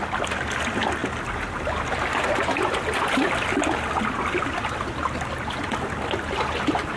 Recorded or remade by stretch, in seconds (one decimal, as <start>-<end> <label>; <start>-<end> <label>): 0.0-7.0 recorded